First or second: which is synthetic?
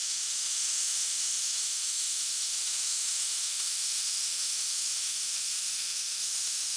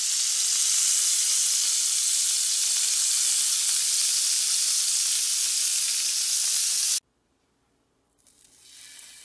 first